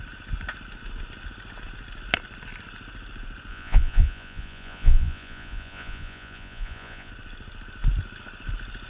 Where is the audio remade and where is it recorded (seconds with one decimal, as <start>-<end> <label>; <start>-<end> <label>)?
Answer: 0.0-3.5 recorded; 3.5-7.1 remade; 7.1-8.9 recorded